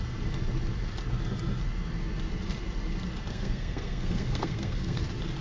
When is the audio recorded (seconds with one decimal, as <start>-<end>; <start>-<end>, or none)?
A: 0.0-3.3; 5.0-5.4